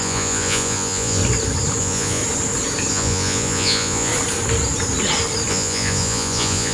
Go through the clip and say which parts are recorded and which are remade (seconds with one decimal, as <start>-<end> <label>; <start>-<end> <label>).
0.0-1.2 remade; 1.2-1.8 recorded; 1.8-2.2 remade; 2.2-2.9 recorded; 2.9-4.1 remade; 4.1-5.5 recorded; 5.5-6.7 remade